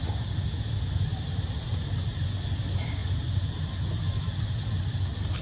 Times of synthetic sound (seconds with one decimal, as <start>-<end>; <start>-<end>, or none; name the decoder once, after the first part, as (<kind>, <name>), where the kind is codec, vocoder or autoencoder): 1.1-2.2 (vocoder, BigVGAN v2)